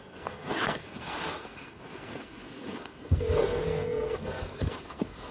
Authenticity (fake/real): fake